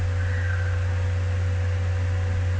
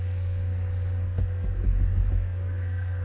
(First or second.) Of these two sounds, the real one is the first